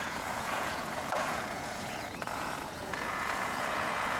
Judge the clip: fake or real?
fake